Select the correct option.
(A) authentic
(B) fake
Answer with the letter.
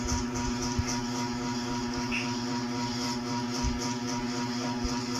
A